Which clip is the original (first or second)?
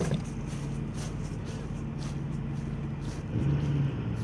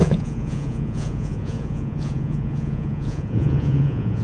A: first